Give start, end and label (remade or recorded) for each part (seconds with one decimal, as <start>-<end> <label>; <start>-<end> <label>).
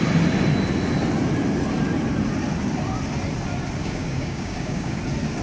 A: 0.0-3.8 recorded; 3.8-5.0 remade; 5.0-5.4 recorded